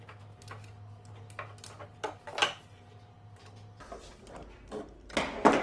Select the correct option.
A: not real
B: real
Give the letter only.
B